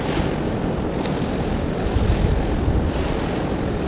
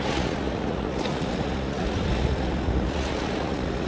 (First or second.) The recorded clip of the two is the first